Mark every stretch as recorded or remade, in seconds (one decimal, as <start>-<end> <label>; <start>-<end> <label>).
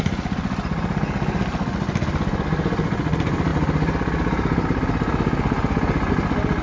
0.0-6.6 recorded